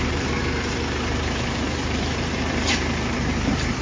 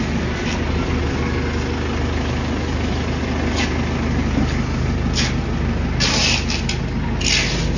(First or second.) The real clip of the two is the second